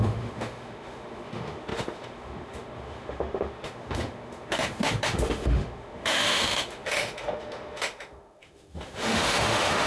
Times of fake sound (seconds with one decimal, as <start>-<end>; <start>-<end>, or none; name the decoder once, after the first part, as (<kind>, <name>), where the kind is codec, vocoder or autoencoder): 0.0-9.9 (autoencoder, DAC-VAE)